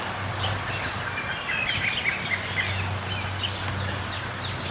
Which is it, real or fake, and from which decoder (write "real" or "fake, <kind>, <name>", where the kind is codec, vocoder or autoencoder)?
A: real